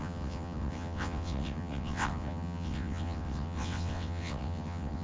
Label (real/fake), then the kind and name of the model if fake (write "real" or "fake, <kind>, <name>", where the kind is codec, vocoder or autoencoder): fake, vocoder, WaveNeXt